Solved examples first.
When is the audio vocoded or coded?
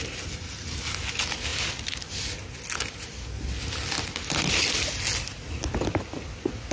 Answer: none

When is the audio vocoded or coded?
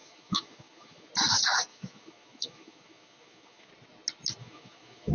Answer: 0.0-1.1 (autoencoder, DAC-VAE); 1.7-3.7; 4.4-5.1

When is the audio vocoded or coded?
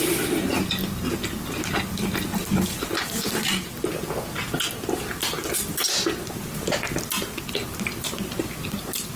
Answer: none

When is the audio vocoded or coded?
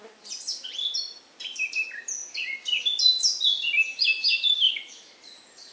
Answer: 3.9-5.1 (autoencoder, DAC-VAE)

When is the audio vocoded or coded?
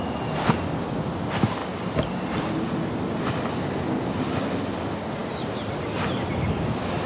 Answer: none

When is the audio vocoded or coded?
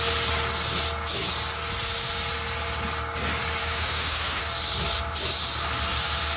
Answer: 3.6-4.4 (autoencoder, DAC-VAE)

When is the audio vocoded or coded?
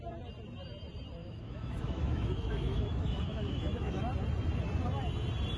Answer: 1.2-4.0 (autoencoder, DAC-VAE)